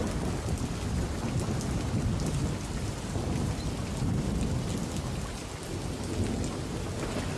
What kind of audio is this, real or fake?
real